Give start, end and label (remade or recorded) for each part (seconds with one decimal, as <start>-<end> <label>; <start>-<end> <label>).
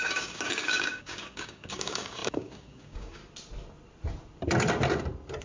0.0-3.2 remade; 3.2-5.4 recorded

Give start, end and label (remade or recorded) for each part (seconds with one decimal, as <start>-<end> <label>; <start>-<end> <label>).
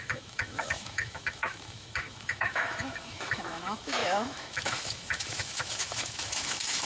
0.0-6.8 remade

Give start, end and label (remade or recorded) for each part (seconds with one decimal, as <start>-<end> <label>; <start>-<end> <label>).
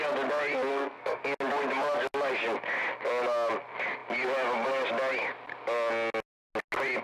0.0-0.7 recorded; 0.7-1.2 remade; 1.2-7.0 recorded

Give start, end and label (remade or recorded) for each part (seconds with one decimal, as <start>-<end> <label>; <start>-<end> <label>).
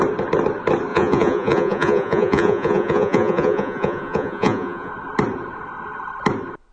0.0-0.9 recorded; 0.9-4.9 remade; 4.9-6.7 recorded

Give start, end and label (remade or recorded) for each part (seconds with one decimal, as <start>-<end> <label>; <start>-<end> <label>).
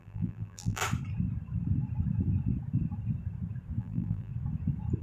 0.0-0.8 remade; 0.8-3.8 recorded; 3.8-4.3 remade; 4.3-5.0 recorded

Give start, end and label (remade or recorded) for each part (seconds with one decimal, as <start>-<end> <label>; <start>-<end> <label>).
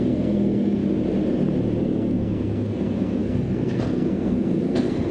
0.0-0.8 remade; 0.8-1.8 recorded; 1.8-5.1 remade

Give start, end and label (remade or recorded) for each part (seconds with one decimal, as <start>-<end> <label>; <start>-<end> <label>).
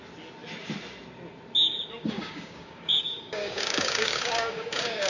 0.0-2.0 recorded; 2.0-5.1 remade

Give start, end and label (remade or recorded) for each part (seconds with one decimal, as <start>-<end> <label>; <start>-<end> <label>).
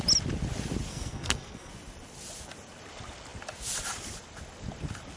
0.0-0.9 recorded; 0.9-1.7 remade; 1.7-5.2 recorded